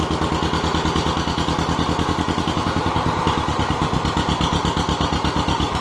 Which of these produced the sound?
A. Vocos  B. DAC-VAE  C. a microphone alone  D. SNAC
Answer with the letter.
C